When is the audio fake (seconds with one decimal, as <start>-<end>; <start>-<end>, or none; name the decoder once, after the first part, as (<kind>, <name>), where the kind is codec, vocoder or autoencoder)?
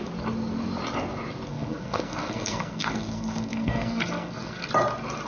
1.5-4.7 (codec, SNAC)